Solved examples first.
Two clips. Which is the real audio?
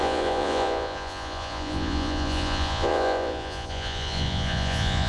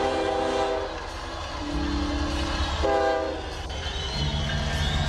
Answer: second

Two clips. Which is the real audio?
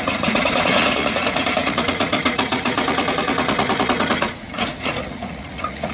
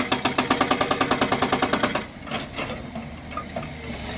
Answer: second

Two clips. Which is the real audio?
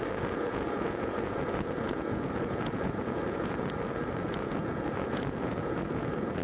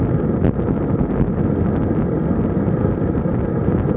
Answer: second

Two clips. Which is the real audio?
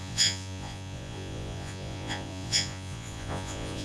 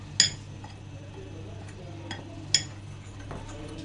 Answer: second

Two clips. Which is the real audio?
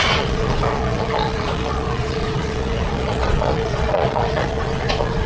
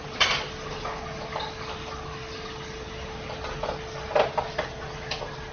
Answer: second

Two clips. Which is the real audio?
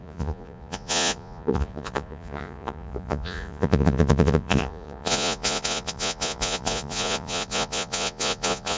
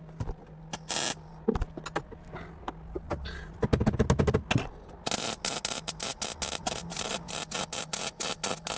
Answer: second